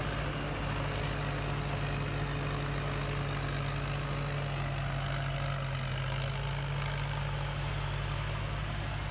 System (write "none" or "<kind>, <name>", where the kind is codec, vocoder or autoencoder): none